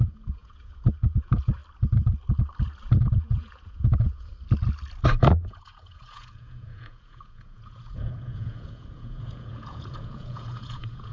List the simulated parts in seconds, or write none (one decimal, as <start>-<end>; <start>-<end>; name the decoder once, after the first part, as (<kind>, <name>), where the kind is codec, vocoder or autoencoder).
0.0-1.6 (vocoder, Vocos); 3.1-4.3; 5.3-11.1